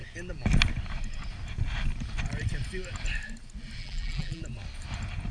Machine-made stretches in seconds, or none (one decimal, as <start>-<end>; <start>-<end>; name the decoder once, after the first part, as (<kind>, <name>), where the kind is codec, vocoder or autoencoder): 3.8-4.4 (vocoder, BigVGAN v2)